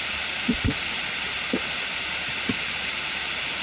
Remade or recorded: recorded